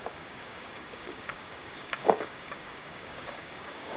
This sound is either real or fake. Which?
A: fake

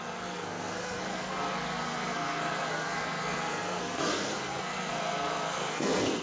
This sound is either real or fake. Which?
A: fake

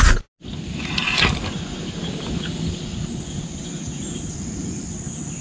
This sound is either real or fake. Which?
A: real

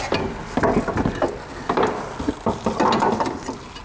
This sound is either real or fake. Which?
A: real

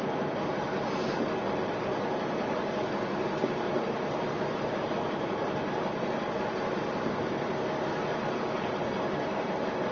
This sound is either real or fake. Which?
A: real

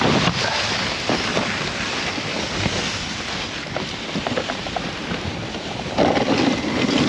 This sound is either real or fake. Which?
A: fake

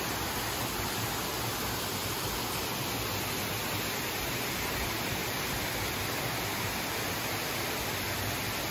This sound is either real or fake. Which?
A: real